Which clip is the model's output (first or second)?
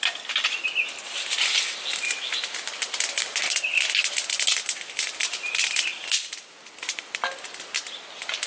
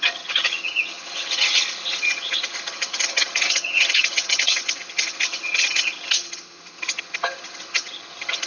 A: second